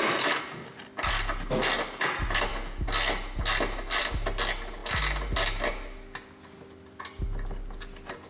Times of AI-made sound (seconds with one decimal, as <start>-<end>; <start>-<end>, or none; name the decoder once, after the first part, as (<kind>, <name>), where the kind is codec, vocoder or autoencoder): none